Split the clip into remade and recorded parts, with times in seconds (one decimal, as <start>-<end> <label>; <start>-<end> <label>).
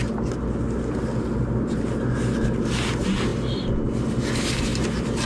0.0-5.3 recorded